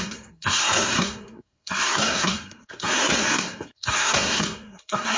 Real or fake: fake